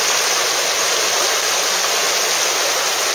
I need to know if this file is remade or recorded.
recorded